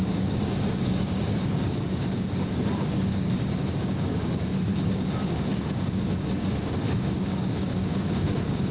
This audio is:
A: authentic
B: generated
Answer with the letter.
B